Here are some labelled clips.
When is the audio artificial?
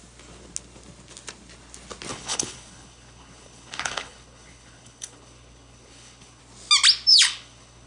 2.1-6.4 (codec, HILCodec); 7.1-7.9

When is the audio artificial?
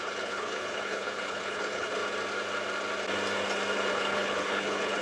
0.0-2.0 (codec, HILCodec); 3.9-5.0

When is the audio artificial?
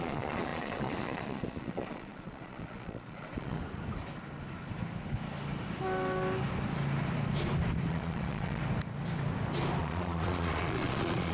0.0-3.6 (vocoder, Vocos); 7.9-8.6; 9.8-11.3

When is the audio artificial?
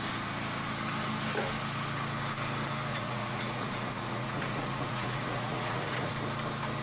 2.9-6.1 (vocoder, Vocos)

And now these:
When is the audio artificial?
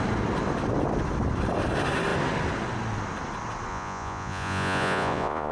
3.7-5.5 (vocoder, Vocos)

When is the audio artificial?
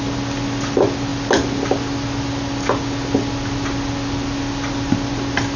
none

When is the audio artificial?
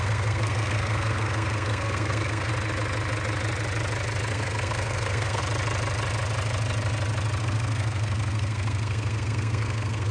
0.0-2.5 (codec, SNAC); 4.3-5.4; 7.4-10.1